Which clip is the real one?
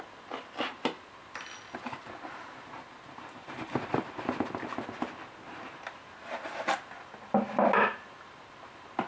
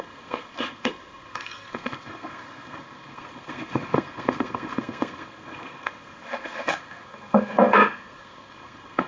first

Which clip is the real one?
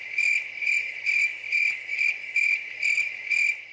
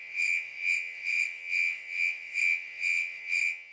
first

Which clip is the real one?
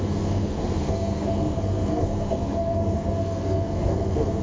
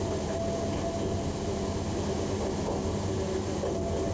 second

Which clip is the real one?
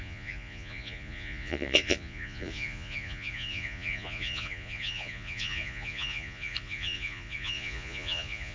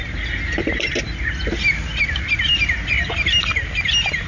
second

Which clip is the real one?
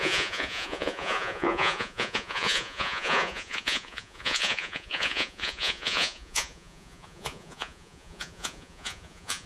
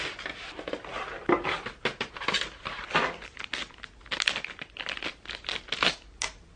second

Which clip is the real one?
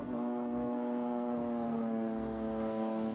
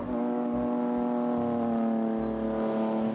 second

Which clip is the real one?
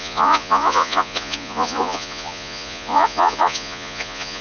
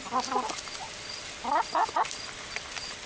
second